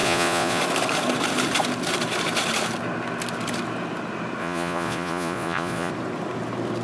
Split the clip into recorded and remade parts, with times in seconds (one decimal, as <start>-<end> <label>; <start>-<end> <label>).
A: 0.0-0.6 remade; 0.6-4.4 recorded; 4.4-5.9 remade; 5.9-6.8 recorded